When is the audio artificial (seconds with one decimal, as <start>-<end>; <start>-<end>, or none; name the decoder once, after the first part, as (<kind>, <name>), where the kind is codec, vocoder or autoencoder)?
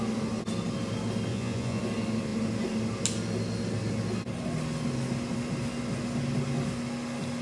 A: 1.3-1.8 (vocoder, Vocos)